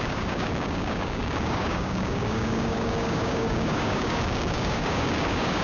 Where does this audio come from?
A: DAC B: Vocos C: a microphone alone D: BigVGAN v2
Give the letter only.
A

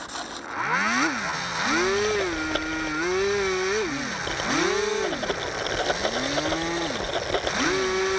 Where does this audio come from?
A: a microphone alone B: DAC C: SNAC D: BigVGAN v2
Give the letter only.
A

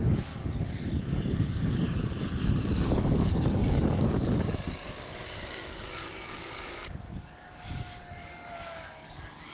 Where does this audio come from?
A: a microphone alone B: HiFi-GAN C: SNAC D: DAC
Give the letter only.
D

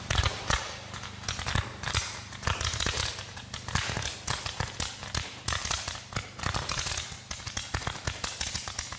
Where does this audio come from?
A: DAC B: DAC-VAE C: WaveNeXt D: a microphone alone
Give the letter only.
D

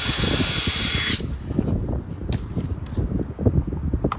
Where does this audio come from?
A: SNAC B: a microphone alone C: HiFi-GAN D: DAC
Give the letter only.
B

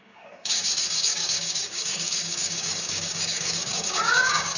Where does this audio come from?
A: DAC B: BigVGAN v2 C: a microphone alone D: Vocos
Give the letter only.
A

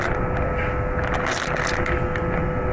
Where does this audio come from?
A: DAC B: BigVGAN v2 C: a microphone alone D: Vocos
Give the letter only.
C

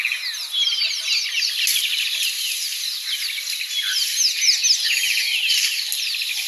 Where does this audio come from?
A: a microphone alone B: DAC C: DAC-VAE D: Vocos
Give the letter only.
A